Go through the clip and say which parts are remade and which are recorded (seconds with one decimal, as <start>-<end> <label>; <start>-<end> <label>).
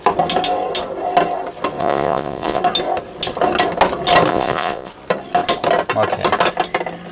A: 0.0-1.8 recorded; 1.8-2.6 remade; 2.6-4.3 recorded; 4.3-4.9 remade; 4.9-7.1 recorded